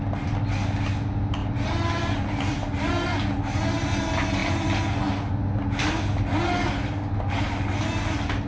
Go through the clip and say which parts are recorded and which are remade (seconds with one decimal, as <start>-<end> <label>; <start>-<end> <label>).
0.0-8.5 recorded